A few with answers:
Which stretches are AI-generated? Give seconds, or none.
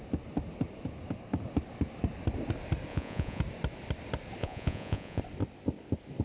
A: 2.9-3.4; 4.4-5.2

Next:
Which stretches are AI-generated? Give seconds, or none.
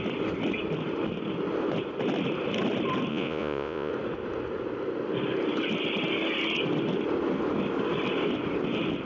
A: 3.1-3.9